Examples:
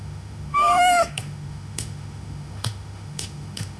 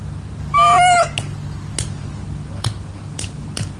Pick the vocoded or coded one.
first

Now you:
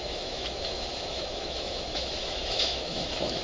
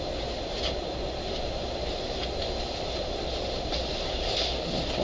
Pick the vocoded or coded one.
first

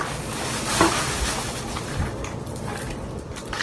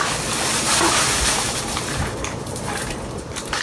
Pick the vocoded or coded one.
second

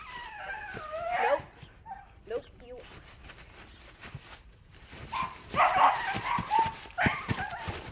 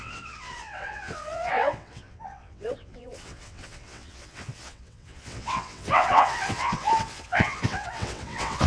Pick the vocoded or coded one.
second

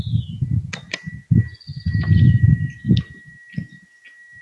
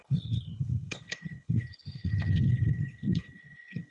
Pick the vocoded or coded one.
second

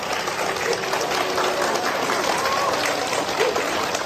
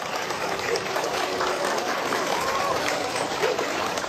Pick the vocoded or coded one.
second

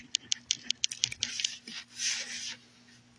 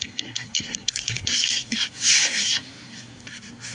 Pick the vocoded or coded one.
second